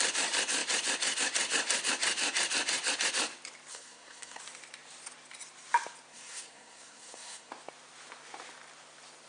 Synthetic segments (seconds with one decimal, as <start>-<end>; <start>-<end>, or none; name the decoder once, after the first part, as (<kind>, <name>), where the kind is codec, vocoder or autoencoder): 3.7-4.4 (codec, SNAC); 6.1-7.5